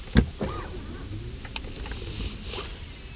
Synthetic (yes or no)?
no